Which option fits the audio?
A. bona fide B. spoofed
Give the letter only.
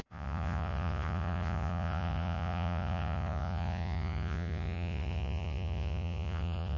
B